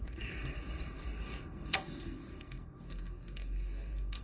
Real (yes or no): no